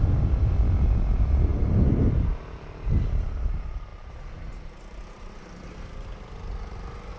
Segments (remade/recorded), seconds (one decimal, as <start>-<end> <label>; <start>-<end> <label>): 0.0-7.2 recorded

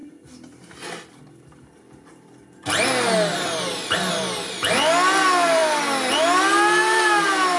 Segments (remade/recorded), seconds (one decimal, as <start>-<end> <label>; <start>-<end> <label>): 0.0-7.6 recorded

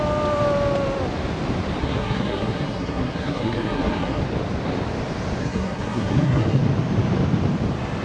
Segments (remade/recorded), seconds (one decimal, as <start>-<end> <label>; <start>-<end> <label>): 0.0-1.8 recorded; 1.8-4.2 remade; 4.2-5.4 recorded; 5.4-6.6 remade; 6.6-8.0 recorded

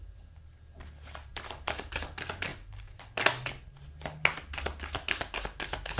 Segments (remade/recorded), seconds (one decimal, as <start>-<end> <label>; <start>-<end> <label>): 0.0-1.3 recorded; 1.3-1.9 remade; 1.9-2.5 recorded; 2.5-3.0 remade; 3.0-6.0 recorded

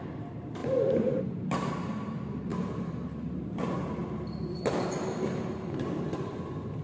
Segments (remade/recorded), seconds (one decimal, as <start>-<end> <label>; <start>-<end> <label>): 0.0-0.6 recorded; 0.6-1.7 remade; 1.7-6.8 recorded

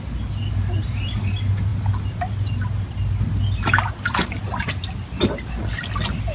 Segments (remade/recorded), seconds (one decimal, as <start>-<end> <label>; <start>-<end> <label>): 0.0-6.3 recorded

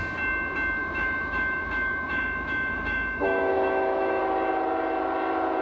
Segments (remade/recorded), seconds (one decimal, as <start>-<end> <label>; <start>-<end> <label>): 0.0-0.8 recorded; 0.8-4.2 remade; 4.2-5.6 recorded